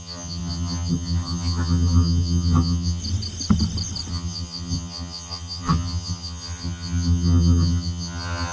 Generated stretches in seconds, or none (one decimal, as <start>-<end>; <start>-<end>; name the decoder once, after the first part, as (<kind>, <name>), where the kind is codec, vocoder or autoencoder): 0.0-3.0 (vocoder, HiFi-GAN); 4.1-8.5